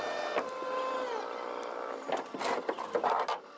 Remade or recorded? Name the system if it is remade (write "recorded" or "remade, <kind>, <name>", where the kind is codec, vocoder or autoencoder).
recorded